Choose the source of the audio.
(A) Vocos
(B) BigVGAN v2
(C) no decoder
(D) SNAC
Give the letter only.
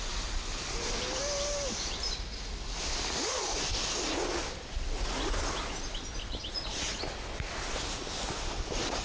C